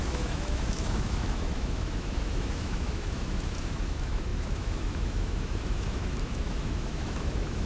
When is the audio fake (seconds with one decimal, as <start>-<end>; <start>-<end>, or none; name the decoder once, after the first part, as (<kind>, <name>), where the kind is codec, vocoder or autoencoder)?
0.0-7.7 (autoencoder, DAC-VAE)